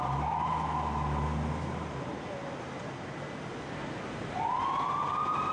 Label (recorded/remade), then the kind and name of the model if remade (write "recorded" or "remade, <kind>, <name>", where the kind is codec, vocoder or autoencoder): recorded